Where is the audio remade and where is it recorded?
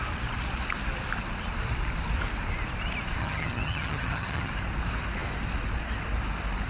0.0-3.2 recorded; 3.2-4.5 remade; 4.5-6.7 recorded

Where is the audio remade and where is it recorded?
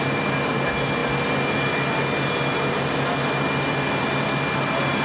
0.0-5.0 recorded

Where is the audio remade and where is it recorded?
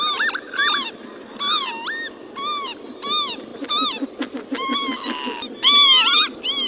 0.0-6.7 recorded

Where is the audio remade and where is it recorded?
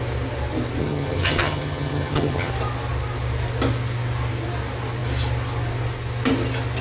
0.0-0.8 recorded; 0.8-2.5 remade; 2.5-6.8 recorded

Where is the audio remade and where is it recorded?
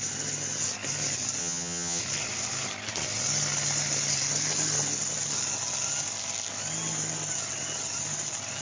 0.0-1.4 recorded; 1.4-2.0 remade; 2.0-8.6 recorded